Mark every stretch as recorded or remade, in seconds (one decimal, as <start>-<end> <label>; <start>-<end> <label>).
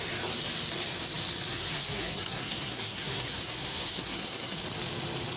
0.0-1.5 recorded; 1.5-4.6 remade; 4.6-5.4 recorded